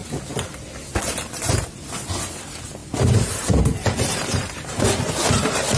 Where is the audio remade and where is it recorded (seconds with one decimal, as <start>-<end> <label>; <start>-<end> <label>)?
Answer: 0.0-2.8 recorded; 2.8-3.3 remade; 3.3-3.8 recorded; 3.8-4.8 remade; 4.8-5.8 recorded